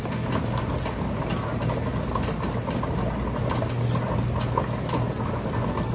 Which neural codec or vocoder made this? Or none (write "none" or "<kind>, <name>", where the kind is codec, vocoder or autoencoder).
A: none